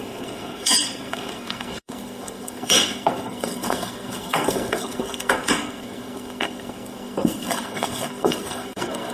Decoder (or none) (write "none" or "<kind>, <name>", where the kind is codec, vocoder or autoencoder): codec, SNAC